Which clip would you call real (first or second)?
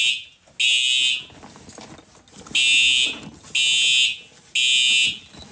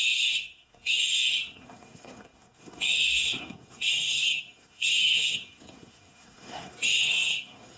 first